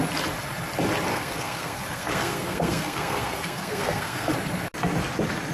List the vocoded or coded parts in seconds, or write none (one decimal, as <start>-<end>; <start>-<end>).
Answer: 1.1-4.3